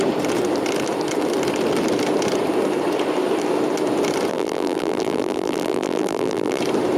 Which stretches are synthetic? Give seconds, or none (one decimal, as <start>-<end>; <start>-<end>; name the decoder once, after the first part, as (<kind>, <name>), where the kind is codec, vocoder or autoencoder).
4.3-6.6 (vocoder, BigVGAN v2)